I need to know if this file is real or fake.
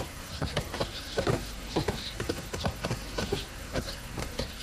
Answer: fake